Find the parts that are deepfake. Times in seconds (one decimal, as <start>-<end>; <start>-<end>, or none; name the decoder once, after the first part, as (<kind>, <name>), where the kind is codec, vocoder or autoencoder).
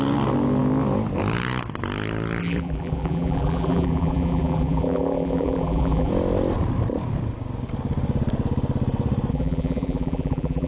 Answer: 2.4-6.1 (vocoder, BigVGAN v2); 9.3-10.7